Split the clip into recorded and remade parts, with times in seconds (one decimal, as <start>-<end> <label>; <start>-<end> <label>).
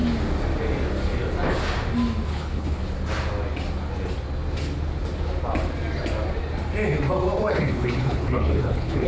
0.0-2.3 recorded; 2.3-2.8 remade; 2.8-7.5 recorded; 7.5-9.1 remade